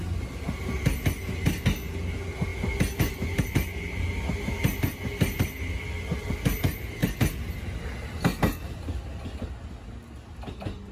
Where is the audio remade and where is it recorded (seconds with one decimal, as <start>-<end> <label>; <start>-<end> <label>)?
0.0-7.0 recorded; 7.0-9.4 remade; 9.4-10.9 recorded